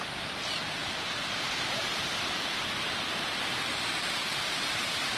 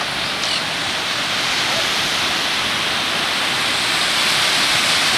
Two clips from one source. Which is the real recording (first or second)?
second